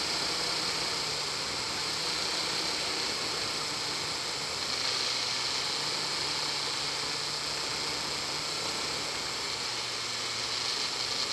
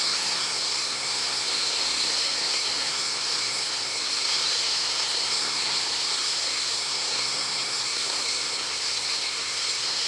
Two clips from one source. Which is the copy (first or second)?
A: second